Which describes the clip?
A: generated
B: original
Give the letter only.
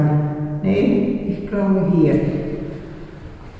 B